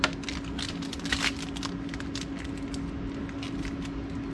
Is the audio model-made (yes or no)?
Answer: no